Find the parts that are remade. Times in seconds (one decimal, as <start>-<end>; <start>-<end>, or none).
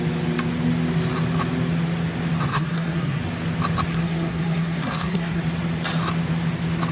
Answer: 2.5-3.2; 3.9-5.4